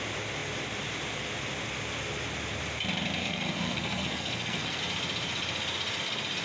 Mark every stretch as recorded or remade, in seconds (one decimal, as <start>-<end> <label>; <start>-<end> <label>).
0.0-3.2 recorded; 3.2-4.8 remade; 4.8-6.4 recorded